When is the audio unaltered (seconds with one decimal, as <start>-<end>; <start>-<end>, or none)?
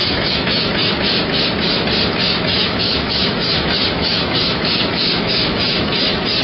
0.9-2.5